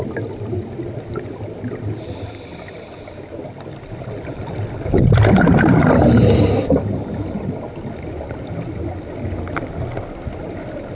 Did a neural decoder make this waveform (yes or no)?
no